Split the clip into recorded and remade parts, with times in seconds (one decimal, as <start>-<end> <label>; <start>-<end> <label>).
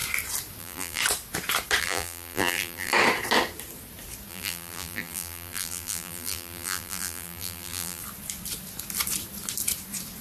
0.0-0.6 recorded; 0.6-1.0 remade; 1.0-1.8 recorded; 1.8-2.9 remade; 2.9-4.3 recorded; 4.3-8.0 remade; 8.0-10.2 recorded